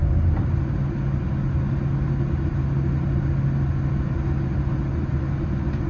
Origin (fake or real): real